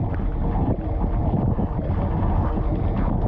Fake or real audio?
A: real